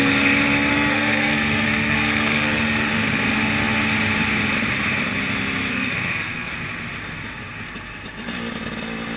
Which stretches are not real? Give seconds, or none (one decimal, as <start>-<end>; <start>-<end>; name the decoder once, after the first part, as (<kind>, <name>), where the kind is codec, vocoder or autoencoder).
0.7-2.9 (codec, SNAC); 5.7-6.5